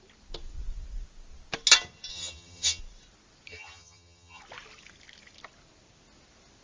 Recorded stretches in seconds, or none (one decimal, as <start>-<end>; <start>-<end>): 0.0-2.1; 2.8-3.5; 4.4-6.6